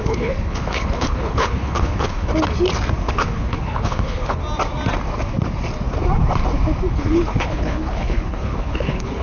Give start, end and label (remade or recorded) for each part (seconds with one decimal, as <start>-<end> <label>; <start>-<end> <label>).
0.0-2.3 remade; 2.3-3.1 recorded; 3.1-4.4 remade; 4.4-6.9 recorded; 6.9-9.2 remade